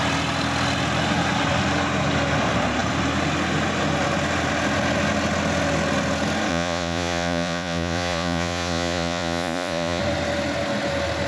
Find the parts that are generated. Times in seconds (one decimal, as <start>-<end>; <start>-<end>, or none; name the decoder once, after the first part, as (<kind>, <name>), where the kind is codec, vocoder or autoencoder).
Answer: 6.5-10.0 (vocoder, Vocos)